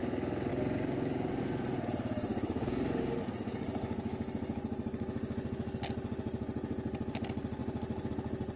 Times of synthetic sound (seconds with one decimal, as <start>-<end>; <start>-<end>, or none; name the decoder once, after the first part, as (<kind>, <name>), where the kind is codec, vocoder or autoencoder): 0.5-1.4 (codec, DAC); 2.3-4.3